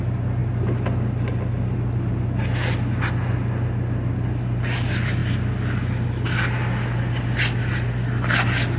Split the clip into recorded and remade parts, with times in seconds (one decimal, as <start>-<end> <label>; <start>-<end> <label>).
0.0-8.8 recorded